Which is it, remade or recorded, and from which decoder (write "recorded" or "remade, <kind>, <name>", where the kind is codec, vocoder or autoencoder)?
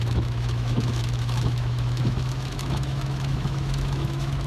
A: remade, autoencoder, DAC-VAE